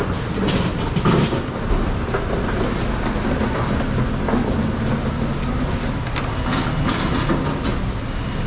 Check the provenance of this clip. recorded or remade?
recorded